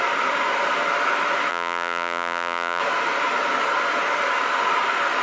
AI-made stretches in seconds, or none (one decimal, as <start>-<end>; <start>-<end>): 1.5-2.8